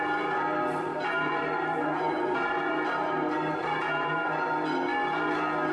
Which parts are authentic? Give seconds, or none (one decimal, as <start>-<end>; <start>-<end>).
0.0-0.9; 4.3-5.7

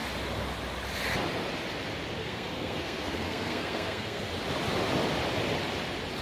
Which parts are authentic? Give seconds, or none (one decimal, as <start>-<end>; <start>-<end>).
0.0-2.2; 4.3-6.2

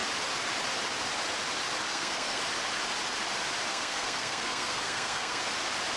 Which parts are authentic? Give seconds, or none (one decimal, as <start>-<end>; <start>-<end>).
0.0-1.9; 2.4-3.7; 5.4-6.0

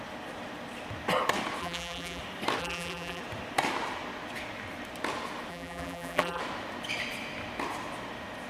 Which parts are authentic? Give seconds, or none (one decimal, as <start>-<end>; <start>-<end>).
0.0-1.6; 2.2-2.6; 3.2-5.5; 6.4-8.5

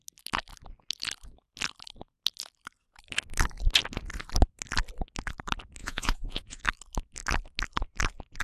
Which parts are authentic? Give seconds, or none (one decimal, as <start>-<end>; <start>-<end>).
0.0-5.8; 6.6-8.4

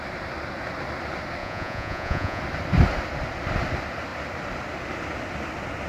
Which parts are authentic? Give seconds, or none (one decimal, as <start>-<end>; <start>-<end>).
0.0-1.4; 2.4-5.9

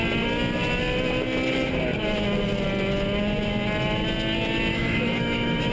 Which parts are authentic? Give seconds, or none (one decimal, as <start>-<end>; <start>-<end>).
0.0-4.7

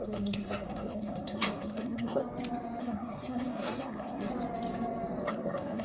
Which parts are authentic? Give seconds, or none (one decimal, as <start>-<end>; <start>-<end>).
2.2-2.8; 4.3-5.3